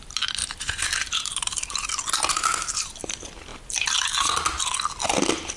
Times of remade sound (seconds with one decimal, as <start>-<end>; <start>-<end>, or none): 0.4-2.0; 3.5-4.3